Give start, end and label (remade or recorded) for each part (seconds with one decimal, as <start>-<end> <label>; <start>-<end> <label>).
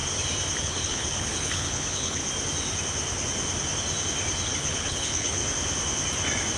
0.0-0.6 recorded; 0.6-2.2 remade; 2.2-4.5 recorded; 4.5-5.4 remade; 5.4-6.6 recorded